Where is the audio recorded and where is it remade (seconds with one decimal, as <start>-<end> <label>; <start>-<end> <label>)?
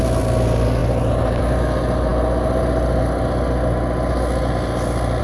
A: 0.0-5.2 recorded